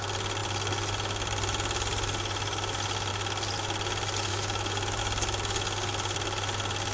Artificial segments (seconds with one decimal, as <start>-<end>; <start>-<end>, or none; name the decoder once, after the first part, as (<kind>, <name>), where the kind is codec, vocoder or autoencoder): 4.3-5.0 (autoencoder, DAC-VAE)